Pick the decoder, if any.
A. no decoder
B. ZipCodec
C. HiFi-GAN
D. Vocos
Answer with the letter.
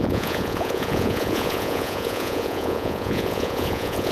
D